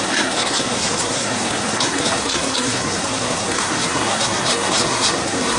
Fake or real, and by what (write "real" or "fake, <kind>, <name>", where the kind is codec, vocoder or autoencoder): fake, codec, SNAC